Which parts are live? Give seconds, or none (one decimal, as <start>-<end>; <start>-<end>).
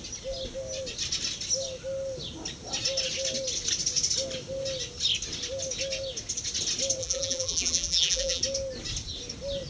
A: 0.0-7.0; 8.4-9.7